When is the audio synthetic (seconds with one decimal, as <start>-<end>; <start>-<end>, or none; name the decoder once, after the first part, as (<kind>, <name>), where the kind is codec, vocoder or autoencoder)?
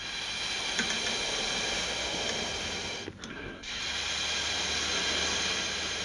3.3-3.8 (codec, SNAC)